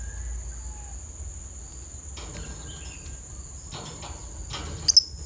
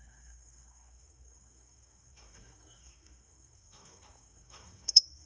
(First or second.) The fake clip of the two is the second